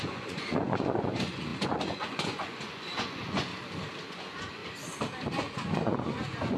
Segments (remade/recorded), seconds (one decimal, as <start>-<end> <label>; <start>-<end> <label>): 0.0-3.5 remade; 3.5-4.1 recorded; 4.1-4.6 remade; 4.6-5.3 recorded; 5.3-6.6 remade